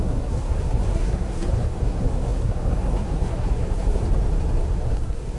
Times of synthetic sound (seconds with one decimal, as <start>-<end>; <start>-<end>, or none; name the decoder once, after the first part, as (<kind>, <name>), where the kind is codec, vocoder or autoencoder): 0.0-4.0 (codec, SNAC); 4.6-5.4